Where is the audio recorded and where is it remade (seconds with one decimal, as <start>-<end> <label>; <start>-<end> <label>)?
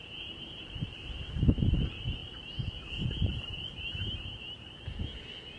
0.0-0.7 remade; 0.7-2.2 recorded; 2.2-5.0 remade; 5.0-5.6 recorded